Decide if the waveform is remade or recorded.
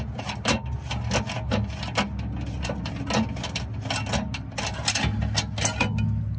recorded